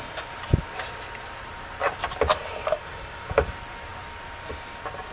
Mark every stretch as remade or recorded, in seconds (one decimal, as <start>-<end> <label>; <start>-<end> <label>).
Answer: 0.0-2.3 recorded; 2.3-3.5 remade; 3.5-5.1 recorded